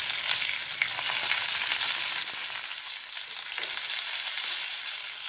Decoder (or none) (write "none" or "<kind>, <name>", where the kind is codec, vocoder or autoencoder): none